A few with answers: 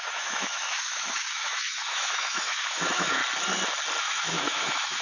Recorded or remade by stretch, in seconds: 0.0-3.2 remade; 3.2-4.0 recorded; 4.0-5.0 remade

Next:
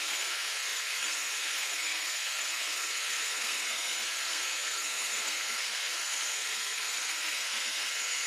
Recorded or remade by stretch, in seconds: 0.0-8.3 remade

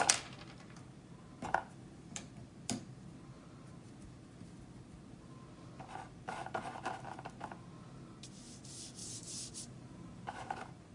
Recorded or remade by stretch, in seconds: 0.0-9.0 recorded; 9.0-10.5 remade; 10.5-10.9 recorded

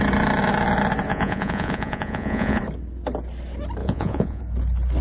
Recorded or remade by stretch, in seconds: 0.0-1.1 recorded; 1.1-2.6 remade; 2.6-3.8 recorded; 3.8-4.4 remade; 4.4-5.0 recorded

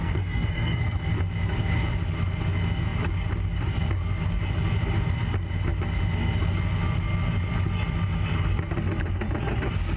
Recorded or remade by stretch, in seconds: 0.0-1.1 remade; 1.1-10.0 recorded

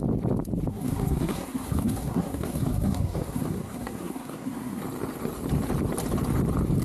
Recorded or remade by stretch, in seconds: 0.0-0.7 recorded; 0.7-4.8 remade; 4.8-6.8 recorded

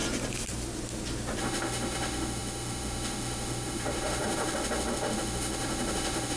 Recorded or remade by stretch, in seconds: 0.0-1.4 recorded; 1.4-6.4 remade

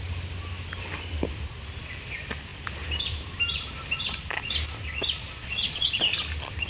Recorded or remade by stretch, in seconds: 0.0-5.4 recorded; 5.4-6.0 remade; 6.0-6.7 recorded